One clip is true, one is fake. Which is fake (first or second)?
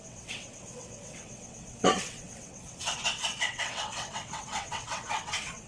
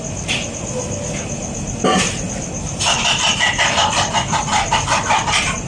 first